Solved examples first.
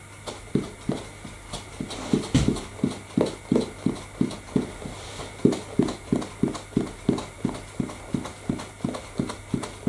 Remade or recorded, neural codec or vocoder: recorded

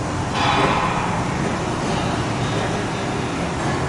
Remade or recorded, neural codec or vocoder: recorded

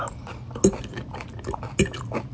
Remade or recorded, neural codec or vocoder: recorded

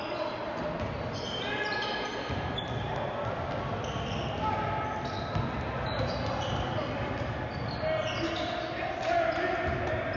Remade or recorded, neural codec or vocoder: recorded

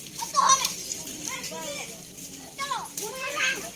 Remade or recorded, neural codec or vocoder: recorded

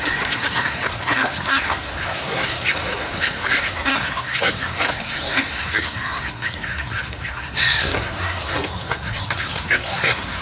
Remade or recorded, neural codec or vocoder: remade, codec, SNAC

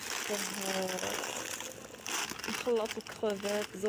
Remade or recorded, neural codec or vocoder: recorded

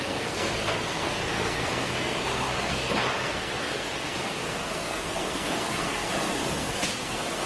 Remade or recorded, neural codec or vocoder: remade, codec, SNAC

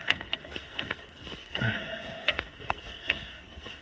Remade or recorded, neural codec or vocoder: remade, codec, SNAC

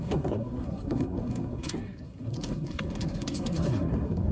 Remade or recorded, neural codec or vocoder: remade, codec, SNAC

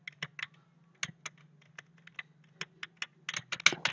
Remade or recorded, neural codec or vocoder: recorded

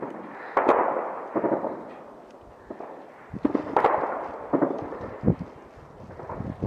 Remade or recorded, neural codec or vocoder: recorded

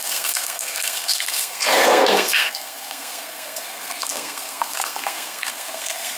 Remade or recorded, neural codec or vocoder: remade, codec, SNAC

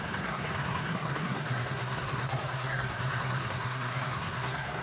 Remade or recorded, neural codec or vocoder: remade, codec, SNAC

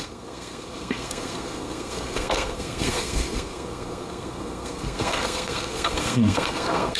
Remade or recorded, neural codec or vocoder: remade, codec, SNAC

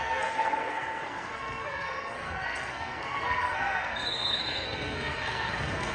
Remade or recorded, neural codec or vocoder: remade, codec, SNAC